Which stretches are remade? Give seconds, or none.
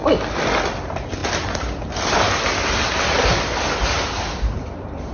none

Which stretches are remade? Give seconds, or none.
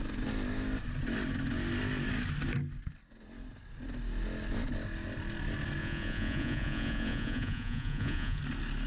5.8-8.4 (vocoder, Vocos)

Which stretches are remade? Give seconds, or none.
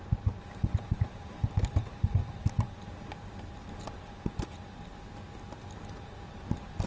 0.0-2.2 (vocoder, BigVGAN v2); 5.9-6.9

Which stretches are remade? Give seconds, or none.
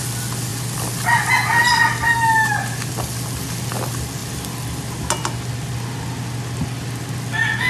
none